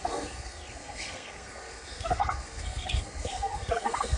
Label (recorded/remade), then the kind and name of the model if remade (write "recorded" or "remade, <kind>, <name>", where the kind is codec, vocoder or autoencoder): remade, codec, SNAC